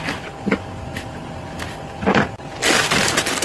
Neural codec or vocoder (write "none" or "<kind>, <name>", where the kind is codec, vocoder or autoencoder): none